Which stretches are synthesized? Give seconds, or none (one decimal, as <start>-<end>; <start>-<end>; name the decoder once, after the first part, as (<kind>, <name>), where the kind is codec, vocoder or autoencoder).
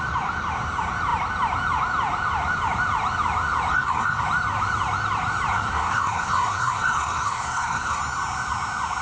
3.7-4.2 (codec, SNAC); 5.5-8.0